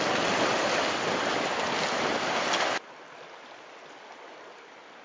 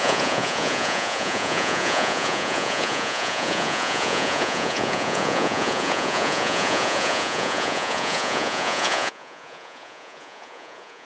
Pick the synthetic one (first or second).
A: second